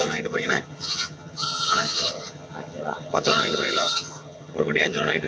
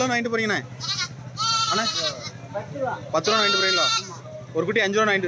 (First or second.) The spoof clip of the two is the first